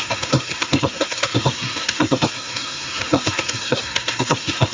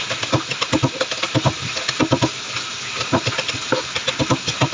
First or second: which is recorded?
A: second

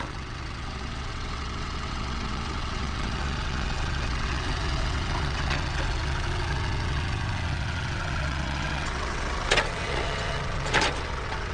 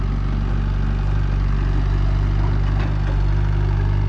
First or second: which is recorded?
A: second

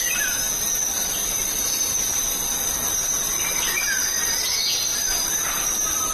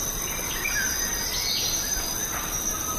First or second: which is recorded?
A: second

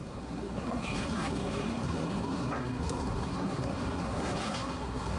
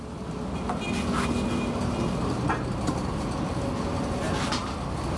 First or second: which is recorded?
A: second